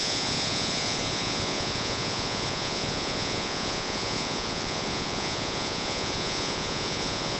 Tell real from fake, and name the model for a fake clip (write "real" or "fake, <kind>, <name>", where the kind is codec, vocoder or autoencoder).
fake, vocoder, Vocos